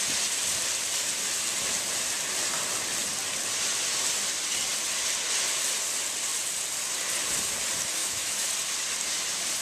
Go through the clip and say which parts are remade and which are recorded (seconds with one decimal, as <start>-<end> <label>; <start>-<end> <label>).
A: 0.0-8.0 recorded; 8.0-8.5 remade; 8.5-9.6 recorded